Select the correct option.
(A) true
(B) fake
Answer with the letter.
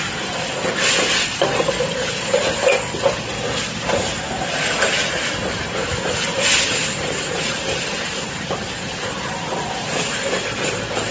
A